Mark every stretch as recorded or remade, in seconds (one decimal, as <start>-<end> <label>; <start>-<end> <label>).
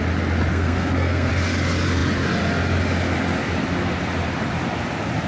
0.0-0.5 recorded; 0.5-1.3 remade; 1.3-5.3 recorded